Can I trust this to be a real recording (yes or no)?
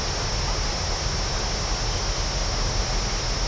yes